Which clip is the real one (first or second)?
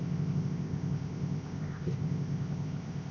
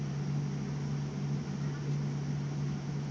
second